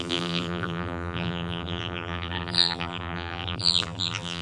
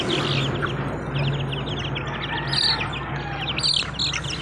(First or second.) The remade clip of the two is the first